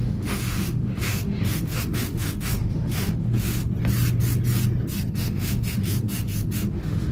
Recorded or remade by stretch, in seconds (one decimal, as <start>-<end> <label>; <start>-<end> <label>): 0.0-3.6 remade; 3.6-5.1 recorded; 5.1-7.1 remade